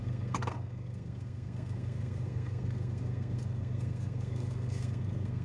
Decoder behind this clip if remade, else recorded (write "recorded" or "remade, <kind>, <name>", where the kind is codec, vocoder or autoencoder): remade, codec, SNAC